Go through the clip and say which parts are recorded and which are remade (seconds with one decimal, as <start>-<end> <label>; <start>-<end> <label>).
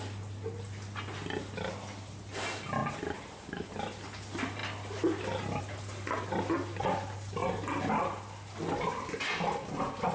0.0-10.1 recorded